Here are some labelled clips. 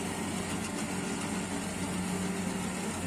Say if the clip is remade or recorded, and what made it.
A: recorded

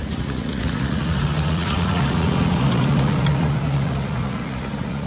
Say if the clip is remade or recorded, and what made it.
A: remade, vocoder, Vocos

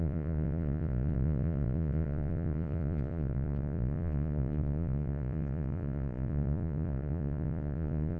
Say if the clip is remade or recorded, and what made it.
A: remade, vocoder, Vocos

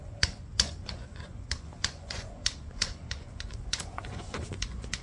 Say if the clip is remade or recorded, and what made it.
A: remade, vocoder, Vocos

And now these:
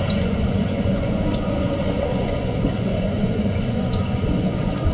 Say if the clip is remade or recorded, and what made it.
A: remade, vocoder, Vocos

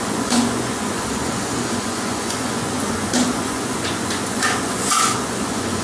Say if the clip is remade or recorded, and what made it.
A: remade, vocoder, Vocos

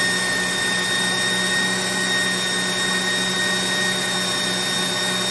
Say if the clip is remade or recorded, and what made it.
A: recorded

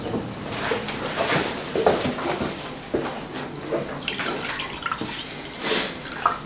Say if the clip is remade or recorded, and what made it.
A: recorded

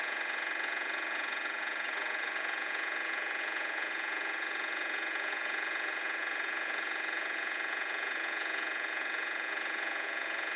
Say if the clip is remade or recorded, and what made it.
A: remade, vocoder, Vocos